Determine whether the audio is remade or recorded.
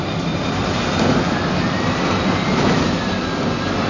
recorded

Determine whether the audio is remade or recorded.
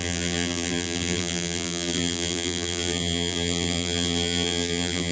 remade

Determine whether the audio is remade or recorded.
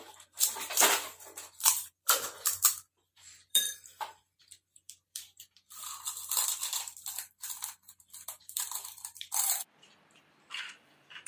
remade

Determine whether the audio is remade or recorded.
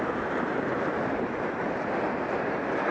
remade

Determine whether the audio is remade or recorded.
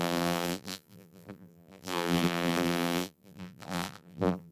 remade